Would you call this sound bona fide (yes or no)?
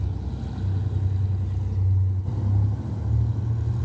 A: yes